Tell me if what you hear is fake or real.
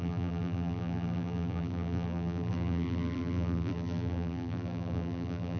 fake